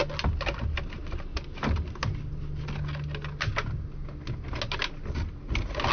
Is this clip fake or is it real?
real